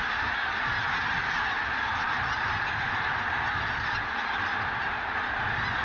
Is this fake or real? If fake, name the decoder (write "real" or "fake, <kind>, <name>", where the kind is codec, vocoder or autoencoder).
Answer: real